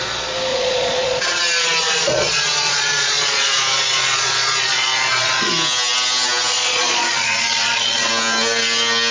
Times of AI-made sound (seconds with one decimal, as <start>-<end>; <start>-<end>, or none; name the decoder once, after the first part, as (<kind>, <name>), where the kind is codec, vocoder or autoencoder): 0.5-1.4 (vocoder, Vocos); 1.8-5.5; 6.5-8.1